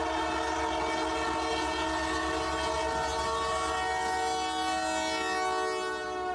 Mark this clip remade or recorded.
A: recorded